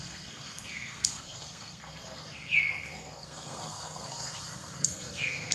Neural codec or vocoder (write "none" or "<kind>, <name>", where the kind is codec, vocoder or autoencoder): codec, SNAC